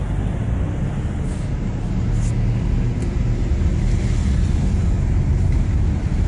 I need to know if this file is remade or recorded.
recorded